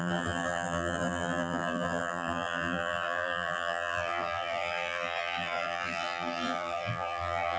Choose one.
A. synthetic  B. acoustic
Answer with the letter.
A